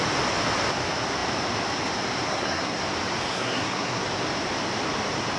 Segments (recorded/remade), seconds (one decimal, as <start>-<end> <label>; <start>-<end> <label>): 0.0-2.3 recorded; 2.3-2.8 remade; 2.8-3.3 recorded; 3.3-4.0 remade; 4.0-5.4 recorded